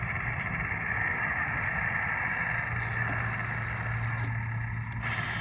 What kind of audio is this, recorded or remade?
recorded